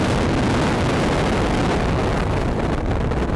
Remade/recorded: recorded